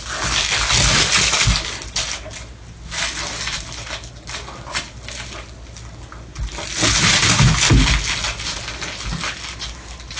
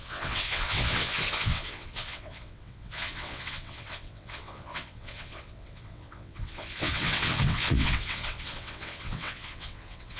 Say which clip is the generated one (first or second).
second